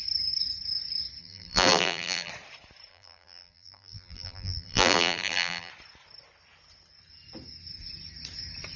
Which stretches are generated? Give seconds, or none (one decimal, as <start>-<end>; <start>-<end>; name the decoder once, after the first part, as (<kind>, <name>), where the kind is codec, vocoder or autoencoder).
1.2-2.3 (vocoder, BigVGAN v2); 2.9-5.7